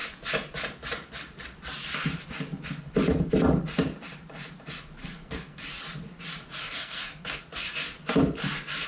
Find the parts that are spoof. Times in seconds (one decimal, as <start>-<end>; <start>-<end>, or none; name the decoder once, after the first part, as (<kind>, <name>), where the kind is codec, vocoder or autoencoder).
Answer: 5.0-5.6 (codec, SNAC); 6.6-7.4